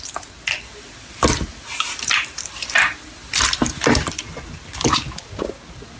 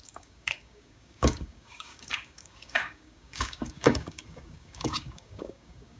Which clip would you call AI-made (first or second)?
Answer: second